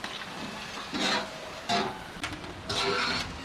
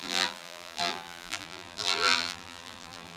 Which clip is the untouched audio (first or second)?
first